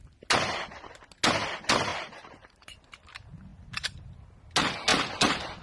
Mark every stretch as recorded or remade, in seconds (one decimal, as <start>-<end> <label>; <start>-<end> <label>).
0.0-1.9 recorded; 1.9-2.7 remade; 2.7-4.9 recorded; 4.9-5.6 remade

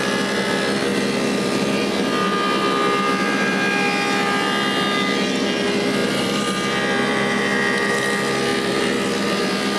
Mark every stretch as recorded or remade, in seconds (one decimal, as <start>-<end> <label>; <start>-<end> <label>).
0.0-6.0 recorded; 6.0-7.4 remade; 7.4-9.8 recorded

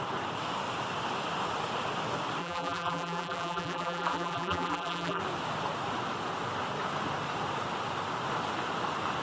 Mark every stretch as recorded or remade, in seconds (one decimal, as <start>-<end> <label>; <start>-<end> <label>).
0.0-2.4 recorded; 2.4-5.2 remade; 5.2-9.2 recorded

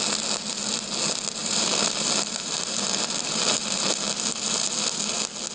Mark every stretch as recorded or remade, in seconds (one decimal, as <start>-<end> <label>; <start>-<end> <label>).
0.0-1.4 recorded; 1.4-4.7 remade; 4.7-5.5 recorded